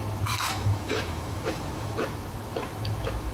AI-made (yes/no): yes